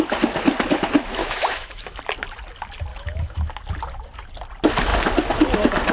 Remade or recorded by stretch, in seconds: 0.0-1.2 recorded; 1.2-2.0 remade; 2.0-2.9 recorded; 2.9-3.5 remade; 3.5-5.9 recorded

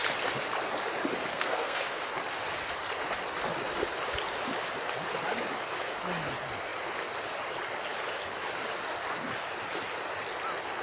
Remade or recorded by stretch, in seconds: 0.0-1.3 recorded; 1.3-2.1 remade; 2.1-10.8 recorded

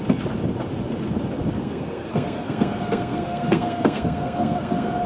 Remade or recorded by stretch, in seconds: 0.0-1.6 recorded; 1.6-5.1 remade

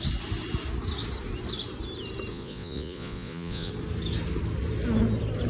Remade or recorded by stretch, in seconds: 0.0-2.3 recorded; 2.3-3.7 remade; 3.7-5.5 recorded

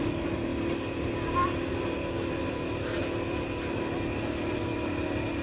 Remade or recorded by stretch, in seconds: 0.0-5.4 recorded